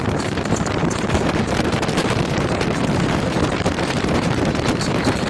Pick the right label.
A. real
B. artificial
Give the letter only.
B